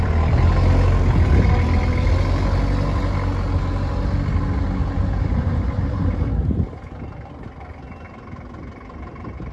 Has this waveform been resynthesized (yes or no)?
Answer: no